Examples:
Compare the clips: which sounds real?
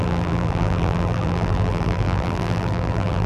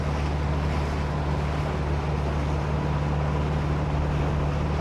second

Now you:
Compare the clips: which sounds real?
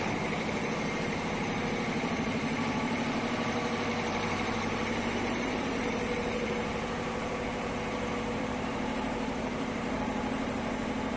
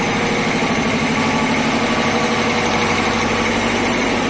second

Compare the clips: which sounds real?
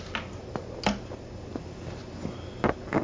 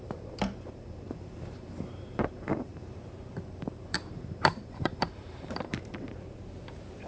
first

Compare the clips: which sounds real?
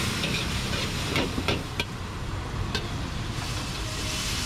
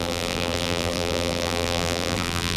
first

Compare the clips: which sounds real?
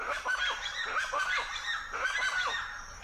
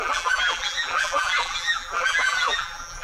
first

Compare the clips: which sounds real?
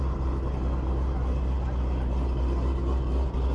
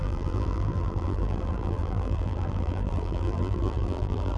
first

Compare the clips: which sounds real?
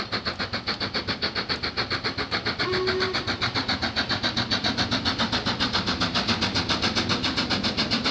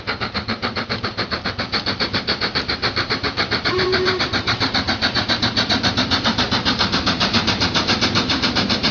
first